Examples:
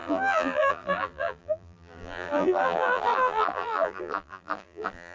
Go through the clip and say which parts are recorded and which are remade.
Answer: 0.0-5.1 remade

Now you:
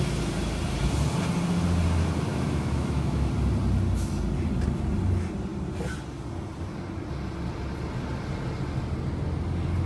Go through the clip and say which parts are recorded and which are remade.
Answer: 0.0-2.3 recorded; 2.3-3.3 remade; 3.3-9.9 recorded

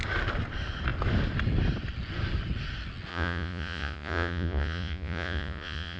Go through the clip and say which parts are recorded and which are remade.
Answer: 0.0-3.1 recorded; 3.1-6.0 remade

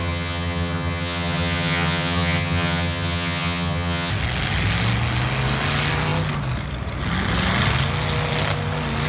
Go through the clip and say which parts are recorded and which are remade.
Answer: 0.0-4.1 remade; 4.1-9.1 recorded

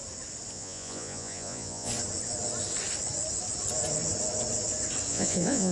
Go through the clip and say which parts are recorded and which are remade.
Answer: 0.0-0.5 recorded; 0.5-1.9 remade; 1.9-5.1 recorded; 5.1-5.7 remade